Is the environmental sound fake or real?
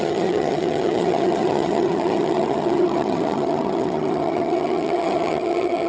fake